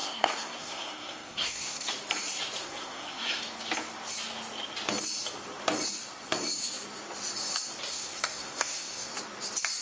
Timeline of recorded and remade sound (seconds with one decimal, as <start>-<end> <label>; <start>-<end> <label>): 0.0-1.9 remade; 1.9-2.6 recorded; 2.6-3.4 remade; 3.4-7.9 recorded; 7.9-9.1 remade; 9.1-9.8 recorded